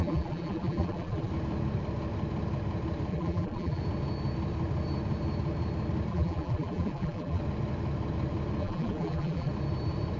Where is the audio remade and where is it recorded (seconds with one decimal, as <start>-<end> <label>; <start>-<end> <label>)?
0.0-1.3 remade; 1.3-3.1 recorded; 3.1-3.8 remade; 3.8-6.1 recorded; 6.1-7.4 remade; 7.4-8.6 recorded; 8.6-9.5 remade; 9.5-10.2 recorded